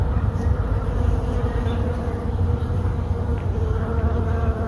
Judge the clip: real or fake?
fake